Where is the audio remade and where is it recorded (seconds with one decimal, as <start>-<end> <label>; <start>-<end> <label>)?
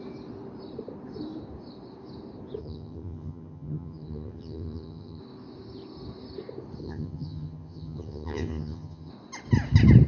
0.0-2.6 recorded; 2.6-5.2 remade; 5.2-6.8 recorded; 6.8-9.1 remade; 9.1-10.1 recorded